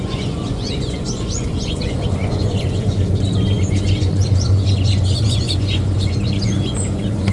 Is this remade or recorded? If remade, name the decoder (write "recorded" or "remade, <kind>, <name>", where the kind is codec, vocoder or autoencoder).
remade, vocoder, Vocos